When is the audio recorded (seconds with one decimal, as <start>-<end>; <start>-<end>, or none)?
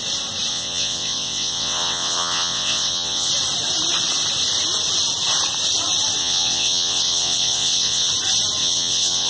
0.0-0.5; 3.3-6.2; 8.1-8.6